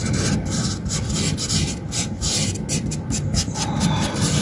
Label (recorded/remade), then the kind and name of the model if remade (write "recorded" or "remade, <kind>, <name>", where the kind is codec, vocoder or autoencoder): recorded